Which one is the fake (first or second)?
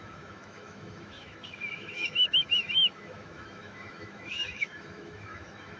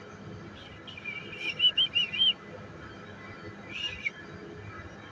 first